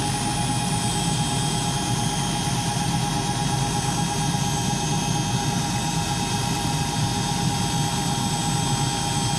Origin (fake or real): real